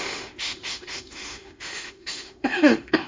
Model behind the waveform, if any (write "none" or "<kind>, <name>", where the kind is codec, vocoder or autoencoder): autoencoder, DAC-VAE